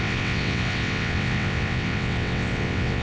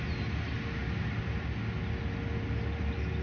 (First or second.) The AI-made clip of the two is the first